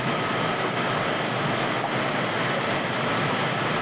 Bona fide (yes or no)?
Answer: yes